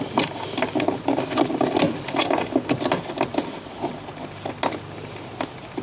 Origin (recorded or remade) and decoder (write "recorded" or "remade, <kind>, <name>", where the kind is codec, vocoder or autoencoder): recorded